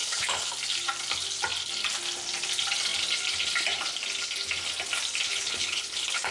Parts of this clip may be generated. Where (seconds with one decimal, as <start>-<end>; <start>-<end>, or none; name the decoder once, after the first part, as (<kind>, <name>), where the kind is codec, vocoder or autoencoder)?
0.0-0.5 (codec, HILCodec); 5.3-6.3